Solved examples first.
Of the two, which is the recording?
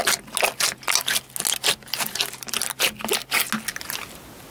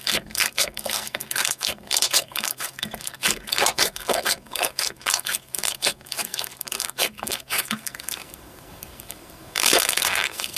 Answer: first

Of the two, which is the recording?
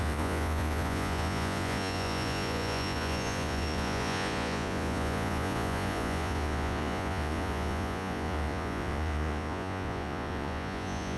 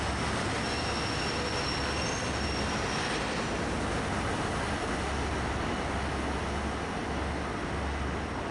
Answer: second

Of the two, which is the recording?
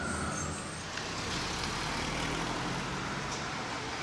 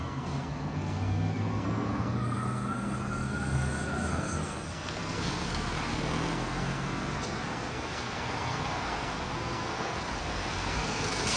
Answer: first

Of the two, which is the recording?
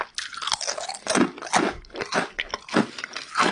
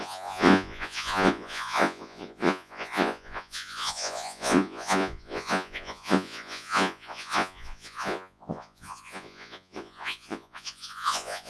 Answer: first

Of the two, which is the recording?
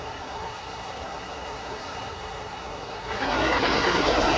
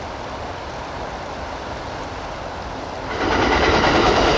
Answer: second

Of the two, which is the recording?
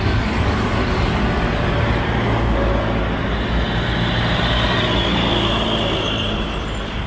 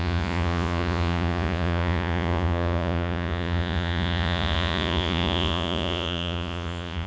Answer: first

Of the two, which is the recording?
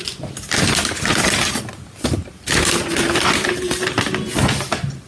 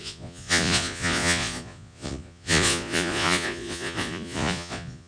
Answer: first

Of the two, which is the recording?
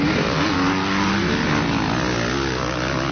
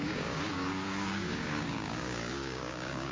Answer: first